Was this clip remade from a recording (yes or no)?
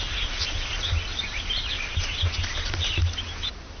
no